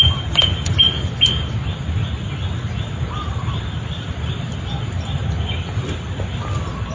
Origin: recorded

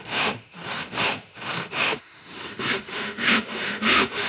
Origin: remade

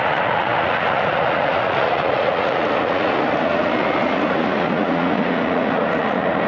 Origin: remade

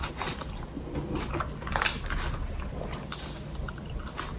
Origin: recorded